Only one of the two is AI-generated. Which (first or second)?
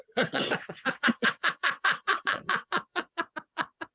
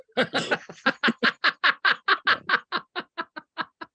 first